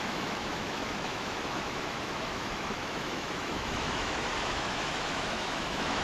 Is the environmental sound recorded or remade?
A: remade